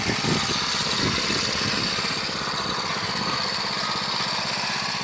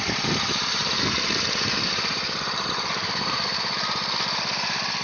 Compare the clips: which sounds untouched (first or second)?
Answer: first